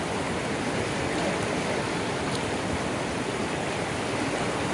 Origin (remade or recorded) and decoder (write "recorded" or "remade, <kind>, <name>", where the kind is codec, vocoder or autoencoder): recorded